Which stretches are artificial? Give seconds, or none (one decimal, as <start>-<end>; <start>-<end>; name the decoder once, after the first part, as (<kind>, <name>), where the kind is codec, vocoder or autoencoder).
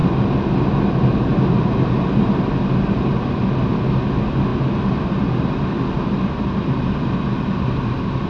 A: none